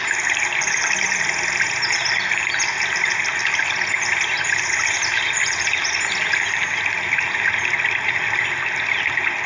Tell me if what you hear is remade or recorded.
remade